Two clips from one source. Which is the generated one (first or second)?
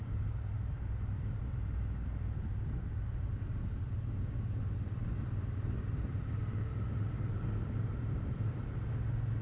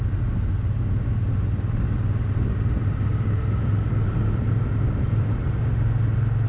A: first